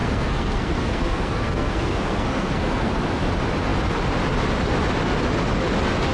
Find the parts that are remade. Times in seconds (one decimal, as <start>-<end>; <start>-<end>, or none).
0.0-2.9